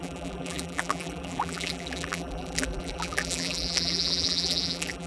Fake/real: fake